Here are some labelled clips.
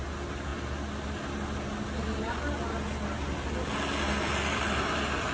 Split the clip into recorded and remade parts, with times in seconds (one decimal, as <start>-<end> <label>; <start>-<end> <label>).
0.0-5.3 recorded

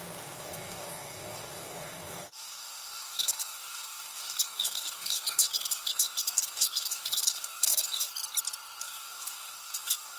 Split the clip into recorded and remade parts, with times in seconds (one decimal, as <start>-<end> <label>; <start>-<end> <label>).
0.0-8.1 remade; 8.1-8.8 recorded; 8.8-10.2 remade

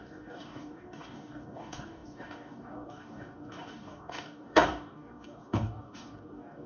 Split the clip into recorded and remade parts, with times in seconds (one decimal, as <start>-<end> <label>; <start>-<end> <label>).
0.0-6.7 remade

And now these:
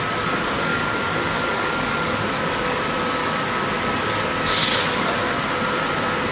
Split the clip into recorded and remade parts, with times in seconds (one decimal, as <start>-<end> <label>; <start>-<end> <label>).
0.0-0.7 recorded; 0.7-2.8 remade; 2.8-3.2 recorded; 3.2-5.1 remade; 5.1-6.3 recorded

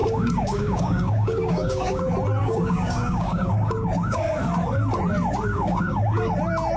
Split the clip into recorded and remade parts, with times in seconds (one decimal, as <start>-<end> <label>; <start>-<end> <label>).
0.0-2.0 remade; 2.0-2.4 recorded; 2.4-4.2 remade; 4.2-5.5 recorded; 5.5-6.2 remade; 6.2-6.8 recorded

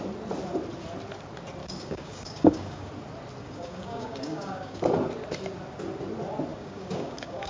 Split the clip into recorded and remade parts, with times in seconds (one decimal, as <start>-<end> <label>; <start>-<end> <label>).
0.0-1.6 recorded; 1.6-2.9 remade; 2.9-3.4 recorded; 3.4-4.8 remade; 4.8-6.5 recorded; 6.5-7.5 remade

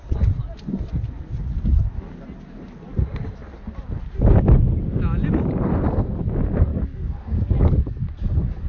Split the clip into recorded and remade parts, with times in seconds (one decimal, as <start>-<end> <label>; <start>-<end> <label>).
0.0-6.7 recorded; 6.7-8.7 remade